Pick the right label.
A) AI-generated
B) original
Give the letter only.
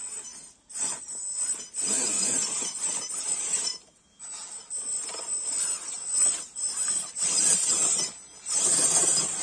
B